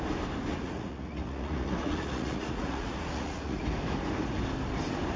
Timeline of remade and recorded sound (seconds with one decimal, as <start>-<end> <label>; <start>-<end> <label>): 0.0-0.5 recorded; 0.5-3.6 remade; 3.6-5.2 recorded